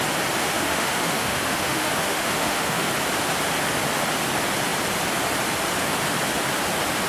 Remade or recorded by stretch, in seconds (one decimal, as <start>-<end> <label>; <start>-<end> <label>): 0.0-0.4 recorded; 0.4-2.9 remade; 2.9-7.1 recorded